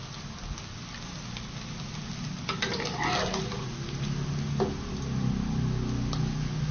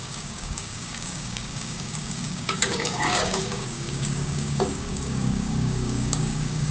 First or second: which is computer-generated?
second